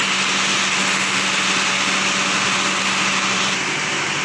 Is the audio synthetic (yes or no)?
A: no